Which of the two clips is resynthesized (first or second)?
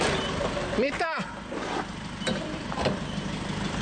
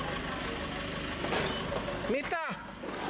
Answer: first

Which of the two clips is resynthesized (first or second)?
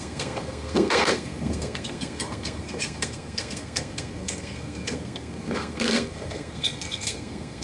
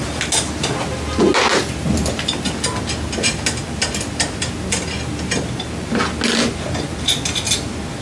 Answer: first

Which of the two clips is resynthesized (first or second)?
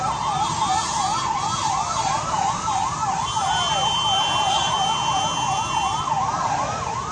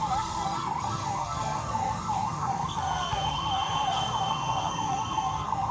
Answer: second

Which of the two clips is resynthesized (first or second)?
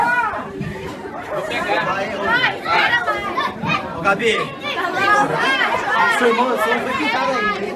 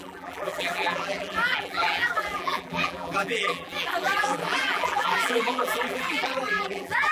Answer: second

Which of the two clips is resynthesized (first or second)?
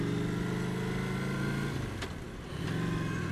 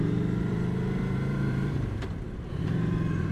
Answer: second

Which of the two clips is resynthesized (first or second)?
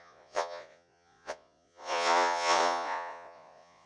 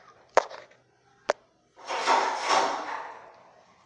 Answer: first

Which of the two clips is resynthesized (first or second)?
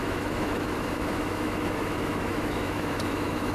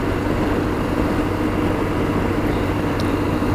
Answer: first